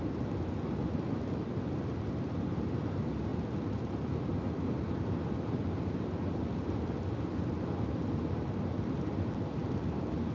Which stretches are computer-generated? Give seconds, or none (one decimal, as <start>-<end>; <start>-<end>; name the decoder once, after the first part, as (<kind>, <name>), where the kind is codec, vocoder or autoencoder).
none